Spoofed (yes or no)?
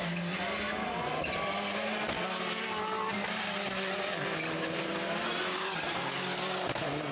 no